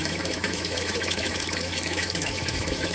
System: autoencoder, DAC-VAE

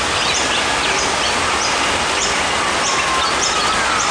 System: none